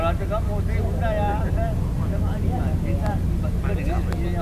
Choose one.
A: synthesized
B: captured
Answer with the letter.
B